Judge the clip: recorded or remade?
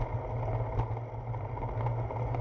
recorded